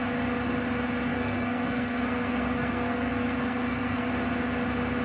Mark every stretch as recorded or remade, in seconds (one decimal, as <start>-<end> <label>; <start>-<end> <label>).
0.0-1.1 recorded; 1.1-4.1 remade; 4.1-5.0 recorded